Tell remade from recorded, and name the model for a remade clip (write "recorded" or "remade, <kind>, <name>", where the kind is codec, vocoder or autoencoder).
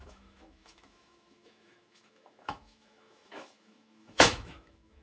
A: remade, autoencoder, DAC-VAE